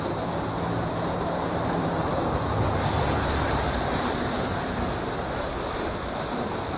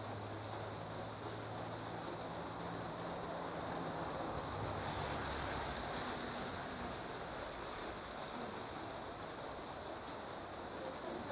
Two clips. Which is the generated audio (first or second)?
first